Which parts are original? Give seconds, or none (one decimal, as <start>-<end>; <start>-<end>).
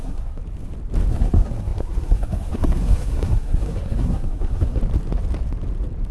0.4-1.1; 4.8-6.1